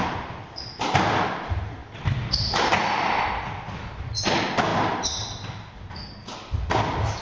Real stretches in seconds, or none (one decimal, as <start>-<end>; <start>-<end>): 0.0-7.2